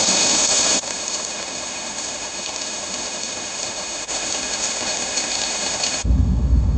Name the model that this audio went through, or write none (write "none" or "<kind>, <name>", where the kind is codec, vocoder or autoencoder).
autoencoder, DAC-VAE